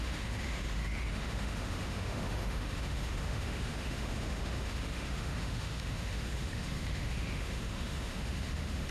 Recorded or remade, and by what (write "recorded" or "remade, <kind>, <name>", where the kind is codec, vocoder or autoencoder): remade, autoencoder, DAC-VAE